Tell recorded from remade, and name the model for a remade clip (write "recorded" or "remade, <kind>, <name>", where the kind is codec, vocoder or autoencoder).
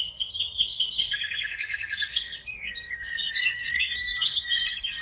remade, codec, SNAC